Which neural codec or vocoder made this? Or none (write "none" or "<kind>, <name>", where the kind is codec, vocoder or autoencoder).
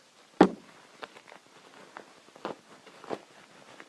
none